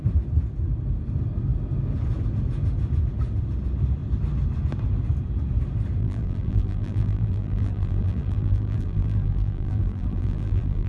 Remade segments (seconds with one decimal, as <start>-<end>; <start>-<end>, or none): 6.0-10.9